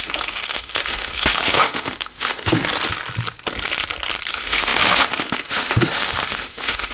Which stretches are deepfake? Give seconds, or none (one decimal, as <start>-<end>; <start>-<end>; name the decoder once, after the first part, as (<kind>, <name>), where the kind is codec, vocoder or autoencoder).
0.0-2.6 (autoencoder, DAC-VAE); 4.3-6.9